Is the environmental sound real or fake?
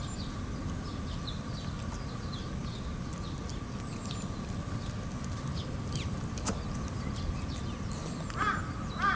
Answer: real